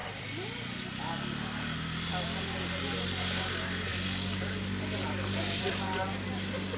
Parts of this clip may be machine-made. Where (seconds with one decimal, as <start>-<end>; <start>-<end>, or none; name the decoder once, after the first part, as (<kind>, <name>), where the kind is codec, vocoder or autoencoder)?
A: 3.9-5.7 (vocoder, BigVGAN v2)